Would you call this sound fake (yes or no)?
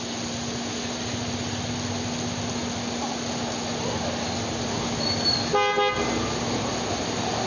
no